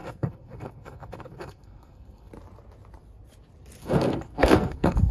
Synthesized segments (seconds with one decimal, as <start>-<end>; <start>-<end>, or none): 0.0-2.3; 3.8-5.1